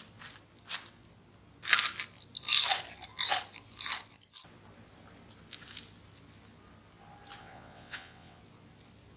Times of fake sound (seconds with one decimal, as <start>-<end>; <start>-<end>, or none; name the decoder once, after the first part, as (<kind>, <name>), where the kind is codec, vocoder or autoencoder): 7.4-8.4 (vocoder, WaveNeXt)

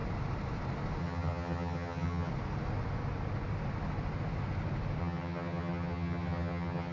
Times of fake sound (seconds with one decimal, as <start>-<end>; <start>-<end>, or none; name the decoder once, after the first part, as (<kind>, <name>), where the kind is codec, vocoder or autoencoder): 1.0-2.3 (vocoder, HiFi-GAN); 5.0-6.9

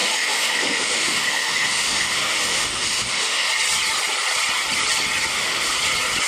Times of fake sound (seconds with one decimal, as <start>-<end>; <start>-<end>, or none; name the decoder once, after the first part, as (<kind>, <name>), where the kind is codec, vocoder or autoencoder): 0.0-3.5 (autoencoder, DAC-VAE); 5.3-5.8

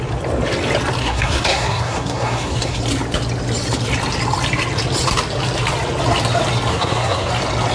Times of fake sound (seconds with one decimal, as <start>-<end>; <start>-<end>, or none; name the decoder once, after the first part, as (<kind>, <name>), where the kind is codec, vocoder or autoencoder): 1.0-2.8 (codec, SNAC); 6.7-7.3

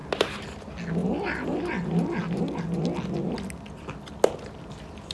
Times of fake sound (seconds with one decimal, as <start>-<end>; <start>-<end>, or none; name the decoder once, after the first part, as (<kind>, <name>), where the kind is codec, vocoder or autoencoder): none

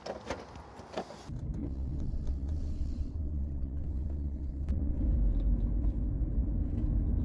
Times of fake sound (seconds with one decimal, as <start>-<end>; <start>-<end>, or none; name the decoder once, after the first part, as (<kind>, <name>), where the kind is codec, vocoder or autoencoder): 1.6-5.0 (vocoder, WaveNeXt)